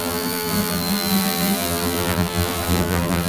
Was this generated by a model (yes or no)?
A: yes